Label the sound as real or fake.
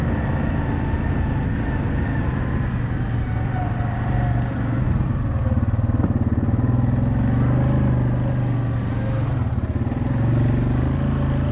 real